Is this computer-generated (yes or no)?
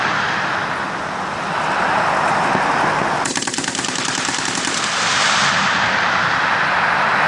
no